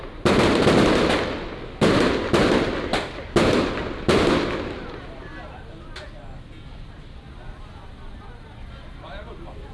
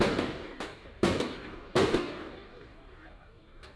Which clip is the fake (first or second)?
second